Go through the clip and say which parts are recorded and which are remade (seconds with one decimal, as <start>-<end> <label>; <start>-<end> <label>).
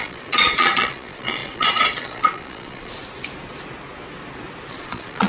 0.0-3.0 remade; 3.0-4.7 recorded; 4.7-5.3 remade